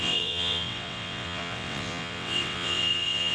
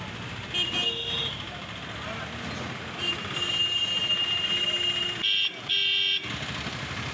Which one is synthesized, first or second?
first